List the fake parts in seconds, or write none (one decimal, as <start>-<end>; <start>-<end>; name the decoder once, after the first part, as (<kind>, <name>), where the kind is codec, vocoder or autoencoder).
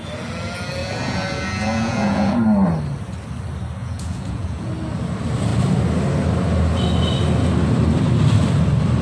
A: 0.8-2.3 (vocoder, Vocos); 3.8-4.7